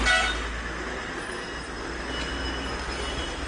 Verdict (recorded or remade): recorded